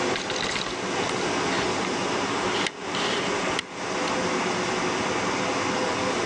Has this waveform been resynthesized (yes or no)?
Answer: no